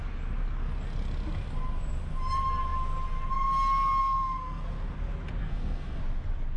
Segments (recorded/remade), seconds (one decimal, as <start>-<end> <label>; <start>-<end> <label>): 0.0-4.0 recorded; 4.0-4.6 remade; 4.6-5.4 recorded; 5.4-6.0 remade; 6.0-6.6 recorded